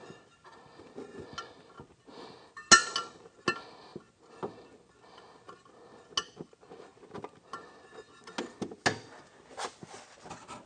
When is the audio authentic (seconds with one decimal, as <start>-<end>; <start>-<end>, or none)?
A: 0.0-10.7